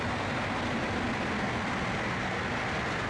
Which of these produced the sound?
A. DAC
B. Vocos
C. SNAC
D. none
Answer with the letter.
D